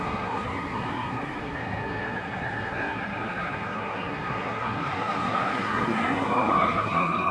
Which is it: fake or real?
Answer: fake